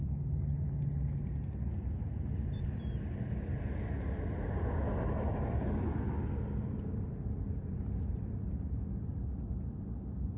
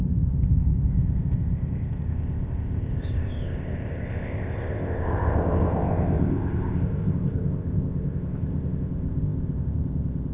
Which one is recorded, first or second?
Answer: first